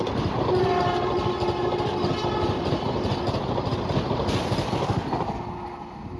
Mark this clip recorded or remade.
recorded